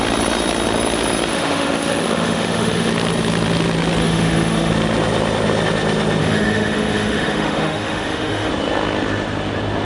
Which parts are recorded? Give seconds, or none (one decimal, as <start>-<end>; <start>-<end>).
0.0-1.3; 2.9-4.0; 4.7-6.2; 8.5-9.8